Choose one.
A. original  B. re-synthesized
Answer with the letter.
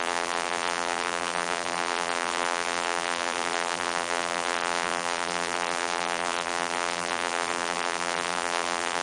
B